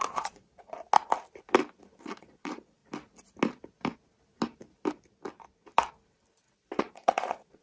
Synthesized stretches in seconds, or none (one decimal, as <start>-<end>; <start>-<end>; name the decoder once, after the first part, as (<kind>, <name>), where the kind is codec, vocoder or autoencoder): 0.0-0.8 (vocoder, Vocos); 2.0-2.8; 6.8-7.6